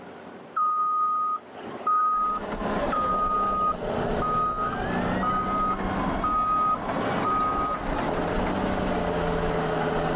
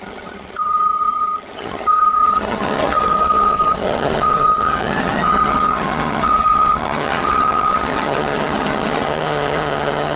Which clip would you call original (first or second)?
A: first